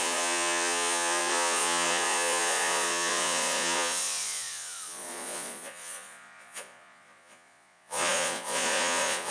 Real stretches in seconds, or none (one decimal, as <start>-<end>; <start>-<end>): none